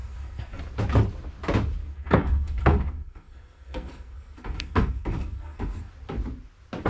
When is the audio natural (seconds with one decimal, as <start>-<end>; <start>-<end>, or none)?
0.6-1.8; 5.9-6.9